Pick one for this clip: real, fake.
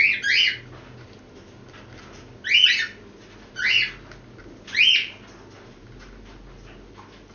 real